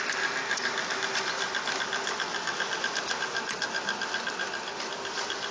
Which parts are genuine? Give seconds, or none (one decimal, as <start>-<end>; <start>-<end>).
0.0-5.5